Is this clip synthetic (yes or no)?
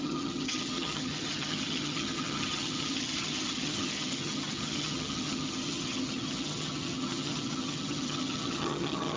yes